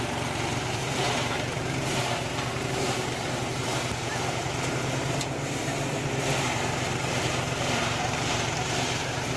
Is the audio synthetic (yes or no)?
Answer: yes